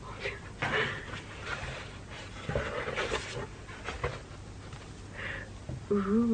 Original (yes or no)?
yes